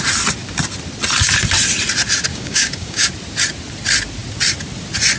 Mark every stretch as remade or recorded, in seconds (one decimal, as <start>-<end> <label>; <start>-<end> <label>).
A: 0.0-2.3 recorded; 2.3-3.1 remade; 3.1-5.2 recorded